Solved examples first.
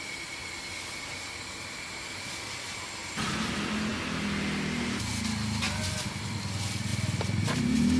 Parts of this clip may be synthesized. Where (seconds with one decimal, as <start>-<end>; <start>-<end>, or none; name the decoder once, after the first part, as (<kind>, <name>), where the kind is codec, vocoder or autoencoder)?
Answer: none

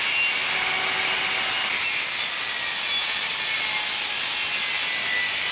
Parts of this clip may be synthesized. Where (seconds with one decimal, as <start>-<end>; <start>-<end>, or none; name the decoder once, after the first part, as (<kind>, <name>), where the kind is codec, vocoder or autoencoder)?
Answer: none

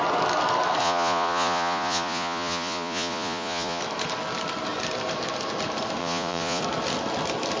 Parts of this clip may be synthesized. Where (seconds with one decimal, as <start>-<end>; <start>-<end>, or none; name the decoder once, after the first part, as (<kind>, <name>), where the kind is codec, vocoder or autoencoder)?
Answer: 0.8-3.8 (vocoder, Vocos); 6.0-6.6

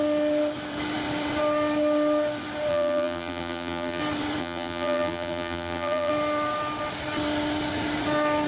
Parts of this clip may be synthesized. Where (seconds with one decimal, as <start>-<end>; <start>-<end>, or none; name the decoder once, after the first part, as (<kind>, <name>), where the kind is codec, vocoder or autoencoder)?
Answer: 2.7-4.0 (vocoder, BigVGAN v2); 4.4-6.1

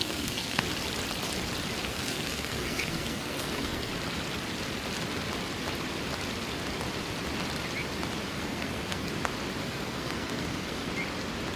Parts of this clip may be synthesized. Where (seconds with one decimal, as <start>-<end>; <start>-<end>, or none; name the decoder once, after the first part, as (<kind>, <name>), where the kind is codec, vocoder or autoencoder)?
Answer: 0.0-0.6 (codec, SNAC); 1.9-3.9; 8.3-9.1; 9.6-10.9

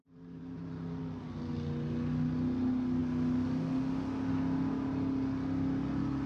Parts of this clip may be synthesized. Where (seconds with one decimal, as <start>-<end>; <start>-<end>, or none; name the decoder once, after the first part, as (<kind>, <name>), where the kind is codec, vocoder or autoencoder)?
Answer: 0.0-1.0 (vocoder, BigVGAN v2)

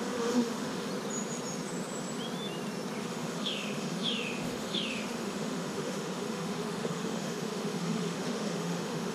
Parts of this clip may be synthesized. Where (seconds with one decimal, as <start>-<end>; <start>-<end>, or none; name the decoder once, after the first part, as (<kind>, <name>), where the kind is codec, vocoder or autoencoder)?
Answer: 0.0-0.9 (autoencoder, DAC-VAE); 3.0-9.1

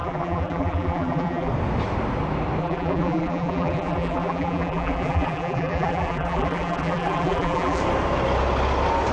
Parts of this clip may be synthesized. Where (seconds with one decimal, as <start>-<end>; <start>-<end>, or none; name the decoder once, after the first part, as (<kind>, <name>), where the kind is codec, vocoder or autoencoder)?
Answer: 0.0-1.5 (vocoder, BigVGAN v2); 2.6-7.8